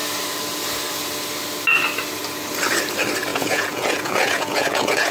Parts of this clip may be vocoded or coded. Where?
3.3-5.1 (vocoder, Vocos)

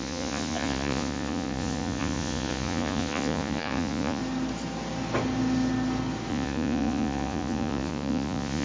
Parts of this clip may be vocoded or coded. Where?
0.0-4.2 (vocoder, Vocos); 6.3-8.6